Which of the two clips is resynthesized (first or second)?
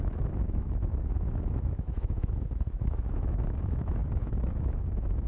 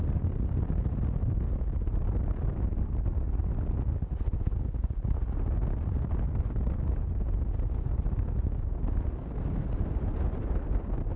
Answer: first